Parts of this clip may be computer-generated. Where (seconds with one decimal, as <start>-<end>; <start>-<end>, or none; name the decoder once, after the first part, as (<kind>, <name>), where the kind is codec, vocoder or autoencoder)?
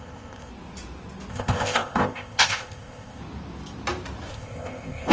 0.0-0.5 (codec, ZipCodec); 1.3-3.2; 4.3-5.1